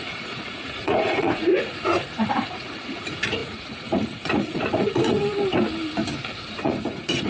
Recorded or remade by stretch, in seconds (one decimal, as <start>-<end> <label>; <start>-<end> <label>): 0.0-1.5 remade; 1.5-2.3 recorded; 2.3-5.2 remade; 5.2-6.6 recorded; 6.6-7.3 remade